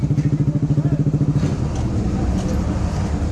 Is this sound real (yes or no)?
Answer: yes